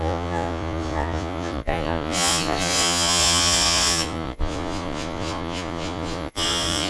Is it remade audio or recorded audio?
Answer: remade